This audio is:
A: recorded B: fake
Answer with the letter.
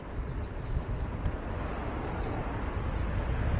A